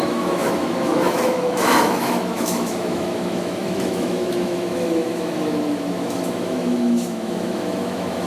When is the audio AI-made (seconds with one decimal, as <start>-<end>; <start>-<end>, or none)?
0.0-8.3